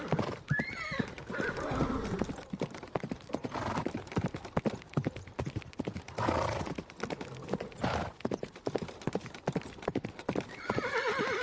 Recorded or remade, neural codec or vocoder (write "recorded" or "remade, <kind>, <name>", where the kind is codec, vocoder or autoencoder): remade, vocoder, BigVGAN v2